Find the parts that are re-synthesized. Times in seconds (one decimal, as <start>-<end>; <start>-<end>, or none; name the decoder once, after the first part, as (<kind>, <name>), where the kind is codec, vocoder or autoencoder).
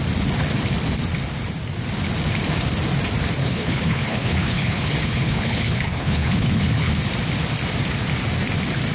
3.4-6.9 (codec, HILCodec)